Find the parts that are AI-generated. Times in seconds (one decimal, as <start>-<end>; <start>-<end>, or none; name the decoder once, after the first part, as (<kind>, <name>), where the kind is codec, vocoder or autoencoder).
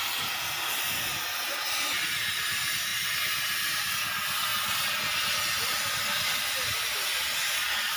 none